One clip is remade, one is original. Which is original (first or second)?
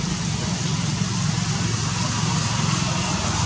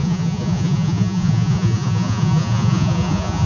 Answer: first